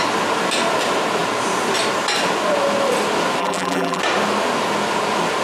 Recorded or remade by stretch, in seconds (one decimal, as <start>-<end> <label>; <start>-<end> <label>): 0.0-3.4 recorded; 3.4-4.0 remade; 4.0-5.4 recorded